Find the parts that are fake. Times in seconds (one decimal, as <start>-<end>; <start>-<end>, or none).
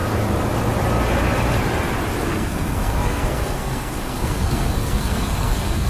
2.3-5.9